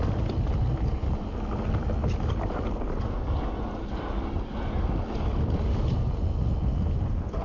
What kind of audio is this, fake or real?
real